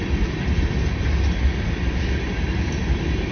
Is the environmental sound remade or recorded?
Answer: recorded